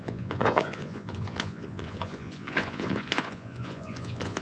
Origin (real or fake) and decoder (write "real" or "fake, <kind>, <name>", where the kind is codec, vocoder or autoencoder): fake, vocoder, Vocos